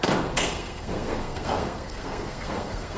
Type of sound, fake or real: fake